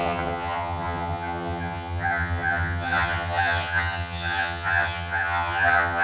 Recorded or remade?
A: remade